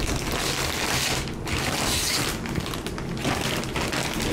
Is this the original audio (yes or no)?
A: yes